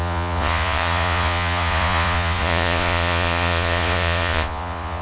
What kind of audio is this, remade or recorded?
remade